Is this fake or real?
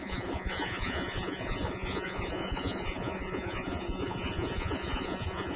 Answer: fake